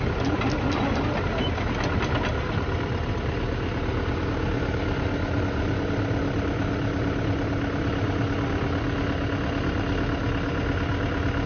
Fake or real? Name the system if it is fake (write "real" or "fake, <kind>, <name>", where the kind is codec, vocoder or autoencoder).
real